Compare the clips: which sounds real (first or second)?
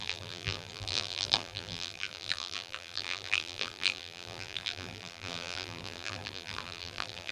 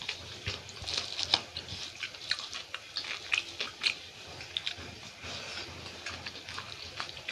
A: second